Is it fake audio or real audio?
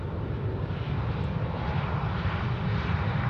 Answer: fake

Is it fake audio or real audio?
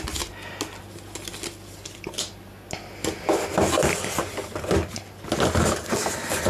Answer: real